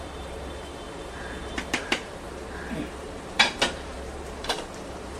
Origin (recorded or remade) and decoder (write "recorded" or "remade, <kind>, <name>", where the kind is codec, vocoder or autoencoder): remade, vocoder, BigVGAN v2